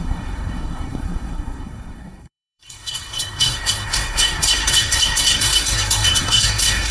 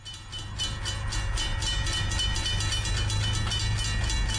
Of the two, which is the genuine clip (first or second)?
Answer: second